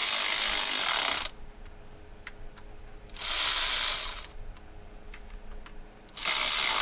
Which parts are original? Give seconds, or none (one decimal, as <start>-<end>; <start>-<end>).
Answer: 0.0-6.8

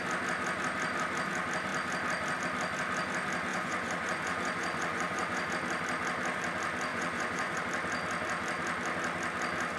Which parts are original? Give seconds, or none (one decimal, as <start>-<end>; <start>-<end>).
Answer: 0.0-3.5; 5.5-6.9; 7.6-9.8

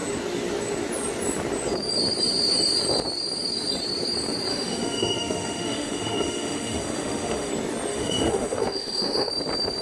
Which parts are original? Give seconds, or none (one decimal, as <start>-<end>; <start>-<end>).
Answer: 0.0-4.5; 7.5-7.9; 9.3-9.8

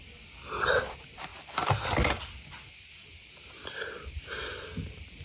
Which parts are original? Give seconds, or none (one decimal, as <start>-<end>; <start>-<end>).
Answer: 0.0-5.2

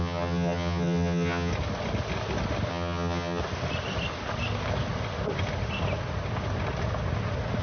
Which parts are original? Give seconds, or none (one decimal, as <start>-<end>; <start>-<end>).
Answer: 1.5-2.7; 3.4-7.6